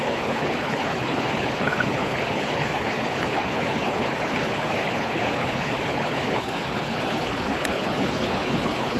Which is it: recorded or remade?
remade